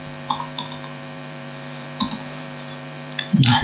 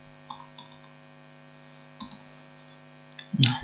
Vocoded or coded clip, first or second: first